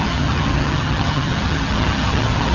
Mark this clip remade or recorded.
remade